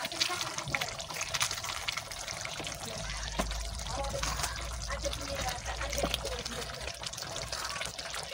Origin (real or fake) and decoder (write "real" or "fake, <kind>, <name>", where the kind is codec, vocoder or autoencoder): real